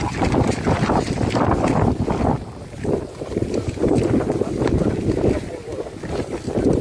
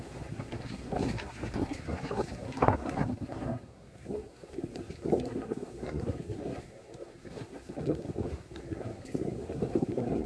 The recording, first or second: first